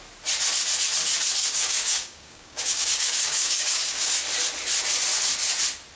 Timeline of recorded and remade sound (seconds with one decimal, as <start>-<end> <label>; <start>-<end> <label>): 0.0-1.4 recorded; 1.4-4.1 remade; 4.1-6.0 recorded